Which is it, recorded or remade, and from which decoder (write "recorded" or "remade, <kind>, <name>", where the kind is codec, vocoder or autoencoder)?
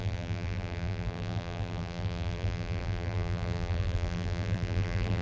remade, vocoder, BigVGAN v2